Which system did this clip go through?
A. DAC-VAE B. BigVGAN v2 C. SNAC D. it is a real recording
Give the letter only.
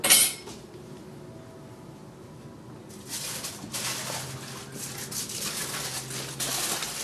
D